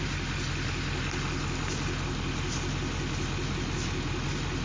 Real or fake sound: real